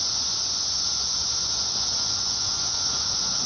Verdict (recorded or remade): remade